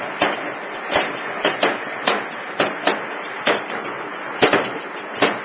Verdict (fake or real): real